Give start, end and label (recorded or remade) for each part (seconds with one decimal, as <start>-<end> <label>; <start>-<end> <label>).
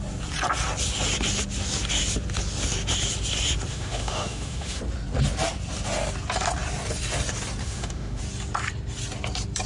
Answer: 0.0-3.7 recorded; 3.7-4.8 remade; 4.8-7.6 recorded; 7.6-8.2 remade; 8.2-9.7 recorded